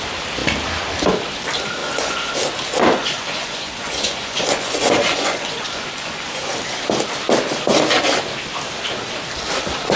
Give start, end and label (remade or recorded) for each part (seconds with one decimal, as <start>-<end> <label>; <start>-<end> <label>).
0.0-1.8 recorded; 1.8-2.3 remade; 2.3-3.0 recorded; 3.0-6.5 remade; 6.5-10.0 recorded